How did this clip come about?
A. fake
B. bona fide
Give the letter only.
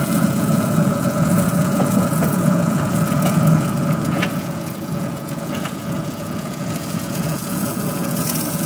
A